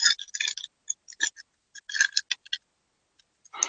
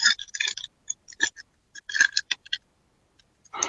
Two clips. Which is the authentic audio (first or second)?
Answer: first